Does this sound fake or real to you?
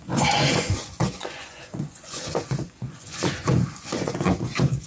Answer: fake